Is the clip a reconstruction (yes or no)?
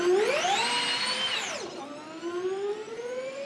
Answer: no